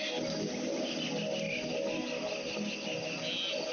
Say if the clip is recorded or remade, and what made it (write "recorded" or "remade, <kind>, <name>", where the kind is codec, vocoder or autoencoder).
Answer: recorded